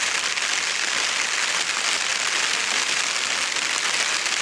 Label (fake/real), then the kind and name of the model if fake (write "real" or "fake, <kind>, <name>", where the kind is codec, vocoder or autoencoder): real